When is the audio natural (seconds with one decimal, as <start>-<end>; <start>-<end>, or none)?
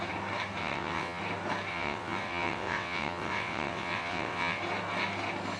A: 0.0-0.6; 1.2-1.7; 4.6-5.6